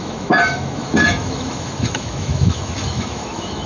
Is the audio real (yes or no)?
no